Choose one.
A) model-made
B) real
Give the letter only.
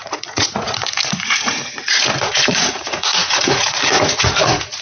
A